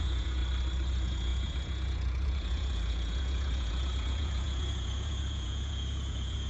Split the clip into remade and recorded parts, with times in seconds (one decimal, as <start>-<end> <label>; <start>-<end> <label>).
0.0-0.4 remade; 0.4-0.9 recorded; 0.9-6.5 remade